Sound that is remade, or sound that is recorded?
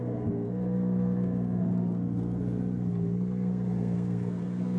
remade